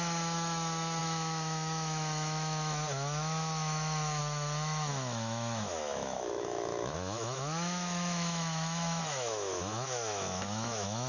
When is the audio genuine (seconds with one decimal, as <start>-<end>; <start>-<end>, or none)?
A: none